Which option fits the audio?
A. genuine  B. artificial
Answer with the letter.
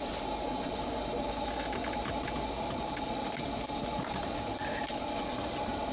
A